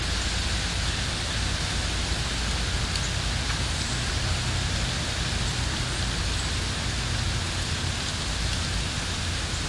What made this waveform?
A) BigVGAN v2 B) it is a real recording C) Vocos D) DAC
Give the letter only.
B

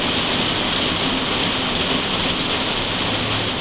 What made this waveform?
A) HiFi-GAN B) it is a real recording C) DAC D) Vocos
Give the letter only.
B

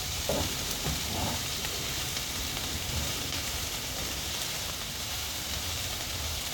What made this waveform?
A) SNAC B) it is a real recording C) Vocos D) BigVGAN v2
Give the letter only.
D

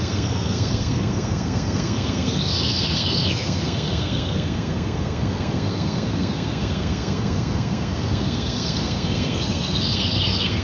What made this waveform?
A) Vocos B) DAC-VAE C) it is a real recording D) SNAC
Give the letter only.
D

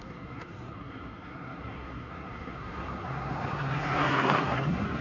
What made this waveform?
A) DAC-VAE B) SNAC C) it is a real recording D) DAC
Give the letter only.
B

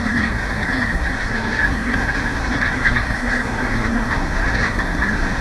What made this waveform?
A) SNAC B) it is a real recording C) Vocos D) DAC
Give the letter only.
A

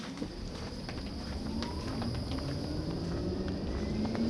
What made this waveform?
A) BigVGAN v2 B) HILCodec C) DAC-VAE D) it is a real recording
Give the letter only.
D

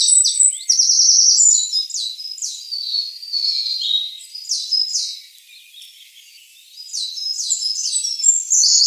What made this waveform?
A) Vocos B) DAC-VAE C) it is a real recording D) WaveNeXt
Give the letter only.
C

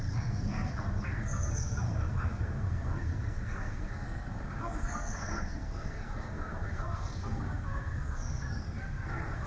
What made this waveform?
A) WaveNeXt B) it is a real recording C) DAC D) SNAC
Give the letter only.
D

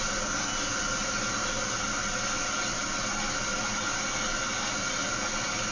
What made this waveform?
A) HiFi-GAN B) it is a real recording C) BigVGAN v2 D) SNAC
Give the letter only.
B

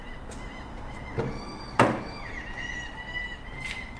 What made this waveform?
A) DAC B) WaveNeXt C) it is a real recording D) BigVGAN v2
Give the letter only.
C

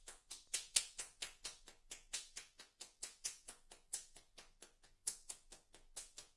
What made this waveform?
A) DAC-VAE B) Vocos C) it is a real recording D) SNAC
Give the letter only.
B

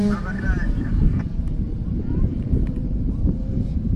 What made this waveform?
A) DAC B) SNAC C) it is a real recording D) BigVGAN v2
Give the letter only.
D